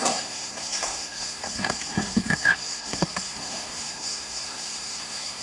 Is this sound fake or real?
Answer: fake